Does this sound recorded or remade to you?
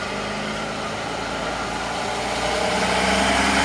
recorded